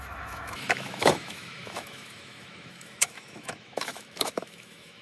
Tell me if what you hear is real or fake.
fake